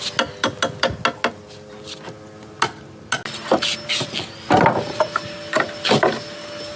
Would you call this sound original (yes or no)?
yes